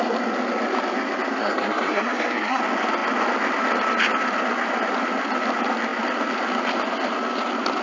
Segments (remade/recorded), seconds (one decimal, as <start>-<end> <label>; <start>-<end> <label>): 0.0-1.4 recorded; 1.4-2.6 remade; 2.6-7.8 recorded